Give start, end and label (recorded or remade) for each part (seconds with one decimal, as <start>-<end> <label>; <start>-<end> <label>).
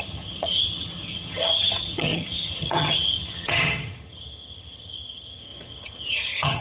0.0-6.6 remade